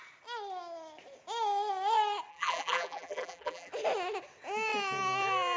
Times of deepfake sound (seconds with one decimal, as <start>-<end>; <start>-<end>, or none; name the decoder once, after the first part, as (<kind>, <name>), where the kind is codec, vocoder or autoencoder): 2.3-3.7 (vocoder, BigVGAN v2)